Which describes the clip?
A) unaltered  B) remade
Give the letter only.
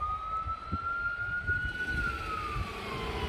A